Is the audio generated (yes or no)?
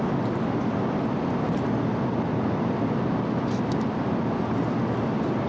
no